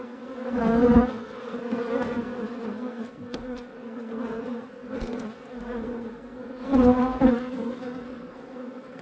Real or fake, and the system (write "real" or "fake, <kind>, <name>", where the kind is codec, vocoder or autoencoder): fake, codec, SNAC